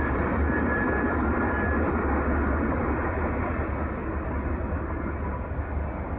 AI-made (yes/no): no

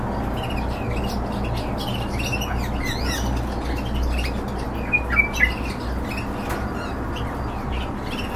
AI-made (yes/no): no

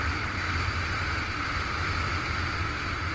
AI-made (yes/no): no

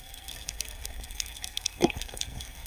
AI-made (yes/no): yes